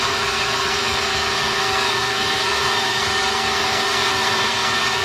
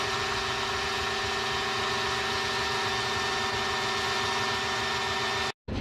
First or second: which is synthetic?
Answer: first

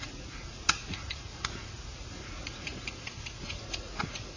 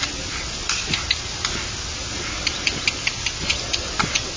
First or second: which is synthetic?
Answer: first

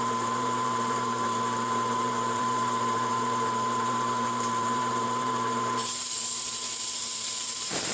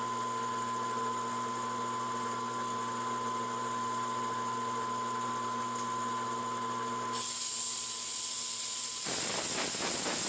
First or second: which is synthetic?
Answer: first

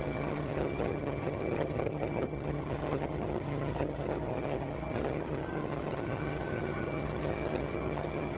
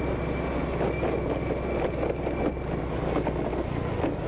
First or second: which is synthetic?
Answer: first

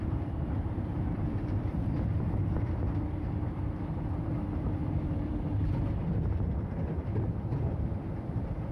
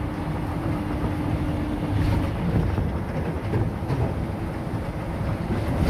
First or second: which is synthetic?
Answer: first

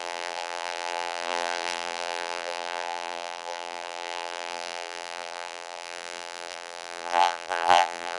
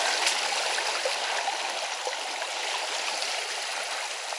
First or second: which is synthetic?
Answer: first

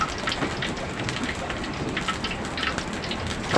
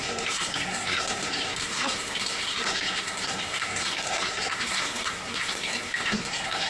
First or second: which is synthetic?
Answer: second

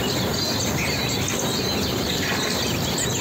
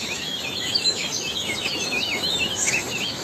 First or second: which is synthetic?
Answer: second